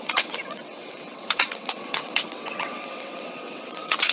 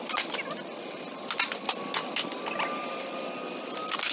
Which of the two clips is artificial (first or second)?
first